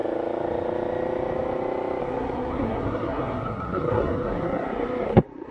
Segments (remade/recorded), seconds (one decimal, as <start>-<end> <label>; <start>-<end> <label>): 0.0-2.0 recorded; 2.0-5.5 remade